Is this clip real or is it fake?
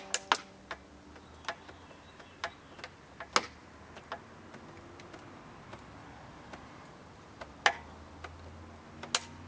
real